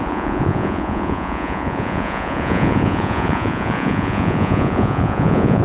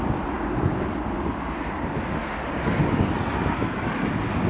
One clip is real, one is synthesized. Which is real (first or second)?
second